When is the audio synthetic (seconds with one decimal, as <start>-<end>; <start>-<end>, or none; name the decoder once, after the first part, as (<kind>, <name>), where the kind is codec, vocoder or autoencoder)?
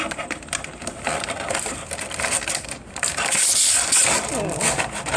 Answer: 0.8-3.9 (vocoder, BigVGAN v2)